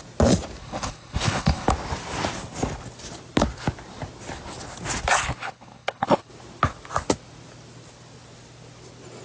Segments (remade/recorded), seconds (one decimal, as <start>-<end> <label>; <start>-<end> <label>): 0.0-0.6 recorded; 0.6-1.7 remade; 1.7-5.2 recorded; 5.2-6.3 remade; 6.3-9.2 recorded